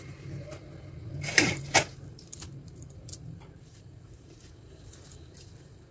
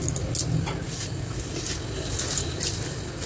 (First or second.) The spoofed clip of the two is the first